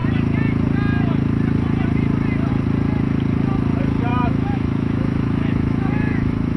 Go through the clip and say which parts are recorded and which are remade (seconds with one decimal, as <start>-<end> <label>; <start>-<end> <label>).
0.0-4.1 recorded; 4.1-6.6 remade